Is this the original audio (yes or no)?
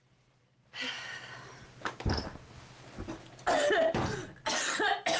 yes